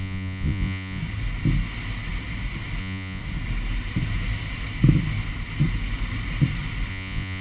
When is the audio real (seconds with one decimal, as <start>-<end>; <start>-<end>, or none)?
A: 1.0-2.8; 3.2-6.9